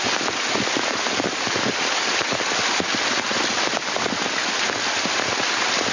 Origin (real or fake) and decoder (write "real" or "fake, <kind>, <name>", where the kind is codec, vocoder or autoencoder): real